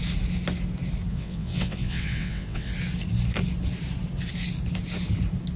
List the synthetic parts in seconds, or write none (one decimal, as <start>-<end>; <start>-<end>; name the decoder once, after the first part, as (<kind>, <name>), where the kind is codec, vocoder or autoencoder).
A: 1.1-2.7 (vocoder, WaveNeXt)